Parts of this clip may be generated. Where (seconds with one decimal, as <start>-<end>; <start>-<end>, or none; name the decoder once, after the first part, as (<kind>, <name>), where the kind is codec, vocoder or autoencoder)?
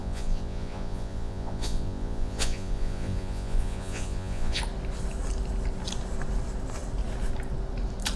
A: 0.0-4.6 (vocoder, Vocos)